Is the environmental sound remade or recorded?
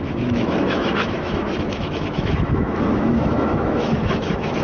remade